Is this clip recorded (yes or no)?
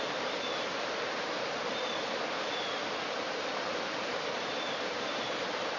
yes